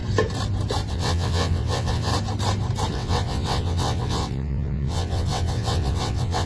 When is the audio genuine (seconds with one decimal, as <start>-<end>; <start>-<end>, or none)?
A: 0.0-0.9; 2.1-2.9